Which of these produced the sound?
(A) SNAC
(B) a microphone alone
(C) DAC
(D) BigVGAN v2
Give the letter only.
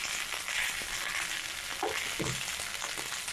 B